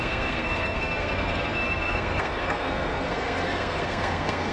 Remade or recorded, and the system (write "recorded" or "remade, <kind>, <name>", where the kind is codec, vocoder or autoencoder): remade, codec, SNAC